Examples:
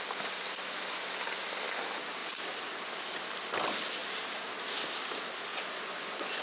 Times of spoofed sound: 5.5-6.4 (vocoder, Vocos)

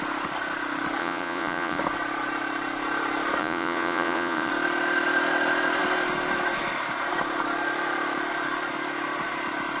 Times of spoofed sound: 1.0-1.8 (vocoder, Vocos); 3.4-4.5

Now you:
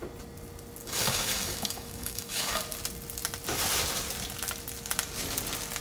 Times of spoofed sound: 0.8-2.6 (codec, DAC)

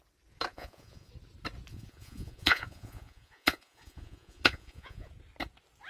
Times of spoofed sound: 0.5-1.1 (vocoder, Vocos); 1.7-5.1

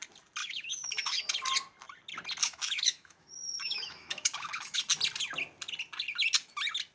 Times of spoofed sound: 0.4-1.2 (autoencoder, DAC-VAE); 2.4-4.8

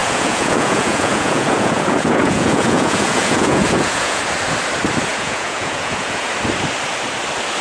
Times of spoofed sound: 0.0-4.2 (vocoder, Vocos); 5.1-6.3

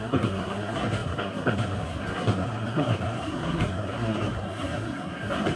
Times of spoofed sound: 0.0-5.6 (codec, SNAC)

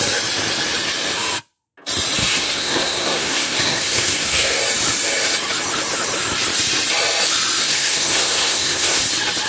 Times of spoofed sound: 2.2-4.6 (codec, SNAC); 7.6-9.0